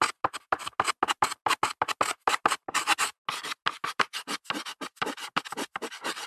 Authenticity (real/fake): real